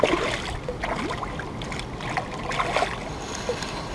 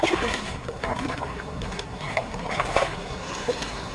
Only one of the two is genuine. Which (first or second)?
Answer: first